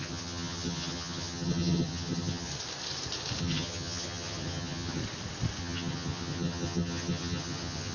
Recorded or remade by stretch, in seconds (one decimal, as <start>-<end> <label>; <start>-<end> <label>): 0.0-2.5 remade; 2.5-3.4 recorded; 3.4-5.0 remade; 5.0-5.6 recorded; 5.6-7.9 remade